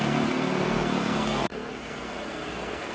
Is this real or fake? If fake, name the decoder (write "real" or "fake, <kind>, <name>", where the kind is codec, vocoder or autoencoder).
fake, codec, SNAC